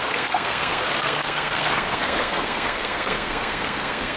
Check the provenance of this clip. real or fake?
fake